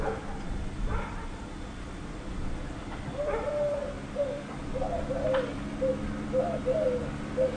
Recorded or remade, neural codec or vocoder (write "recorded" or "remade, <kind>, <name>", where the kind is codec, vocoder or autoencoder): remade, vocoder, BigVGAN v2